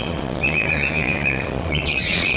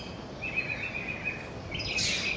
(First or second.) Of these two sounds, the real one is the second